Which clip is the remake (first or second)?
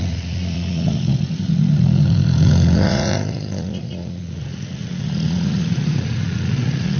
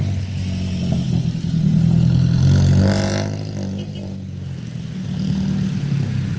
first